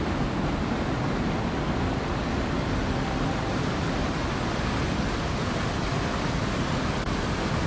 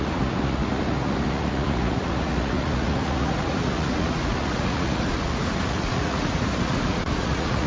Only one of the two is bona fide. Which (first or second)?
first